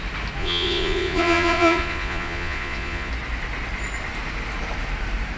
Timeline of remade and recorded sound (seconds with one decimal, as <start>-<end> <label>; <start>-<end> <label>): 0.0-0.4 recorded; 0.4-3.1 remade; 3.1-5.4 recorded